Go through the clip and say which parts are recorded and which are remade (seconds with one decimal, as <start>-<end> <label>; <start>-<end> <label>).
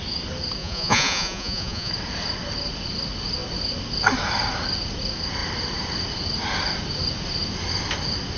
0.0-0.6 recorded; 0.6-1.9 remade; 1.9-8.4 recorded